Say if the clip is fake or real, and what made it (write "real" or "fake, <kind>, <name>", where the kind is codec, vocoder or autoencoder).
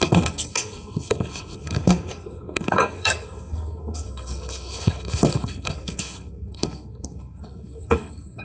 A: fake, codec, SNAC